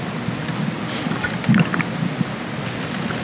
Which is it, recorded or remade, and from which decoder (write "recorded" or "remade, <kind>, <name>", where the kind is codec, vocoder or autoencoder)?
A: recorded